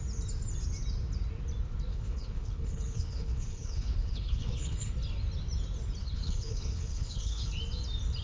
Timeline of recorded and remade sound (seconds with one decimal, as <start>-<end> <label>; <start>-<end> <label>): 0.0-1.9 recorded; 1.9-4.9 remade; 4.9-6.0 recorded; 6.0-7.5 remade; 7.5-8.2 recorded